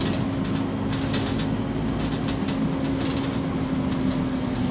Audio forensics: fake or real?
real